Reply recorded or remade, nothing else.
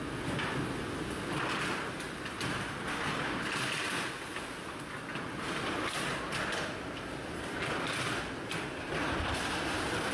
recorded